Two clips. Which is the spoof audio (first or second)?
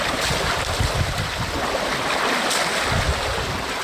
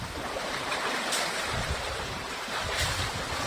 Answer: second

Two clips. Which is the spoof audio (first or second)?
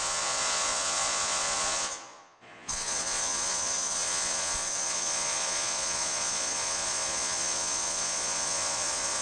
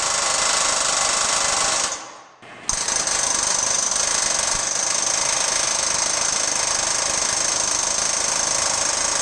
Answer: first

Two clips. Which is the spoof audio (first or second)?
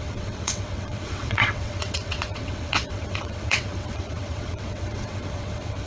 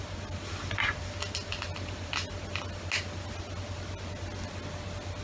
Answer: first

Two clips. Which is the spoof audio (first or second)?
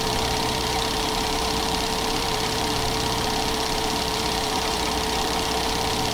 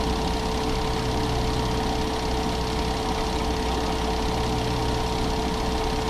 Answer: first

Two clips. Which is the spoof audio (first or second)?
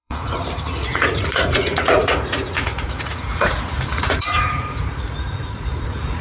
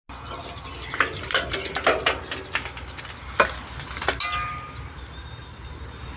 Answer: first